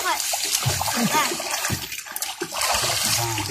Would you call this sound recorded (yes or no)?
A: yes